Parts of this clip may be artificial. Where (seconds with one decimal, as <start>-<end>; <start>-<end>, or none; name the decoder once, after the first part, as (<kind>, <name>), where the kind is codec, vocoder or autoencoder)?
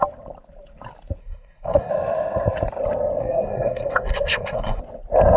1.2-1.9 (codec, SNAC); 3.2-4.8